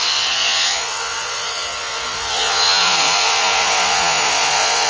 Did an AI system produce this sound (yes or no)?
yes